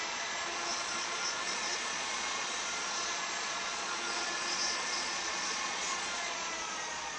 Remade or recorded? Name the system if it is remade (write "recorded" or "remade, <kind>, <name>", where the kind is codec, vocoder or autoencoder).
remade, vocoder, Vocos